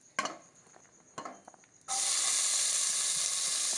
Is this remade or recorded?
recorded